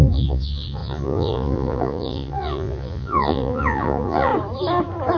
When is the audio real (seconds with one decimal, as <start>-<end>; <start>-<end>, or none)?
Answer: 4.3-5.2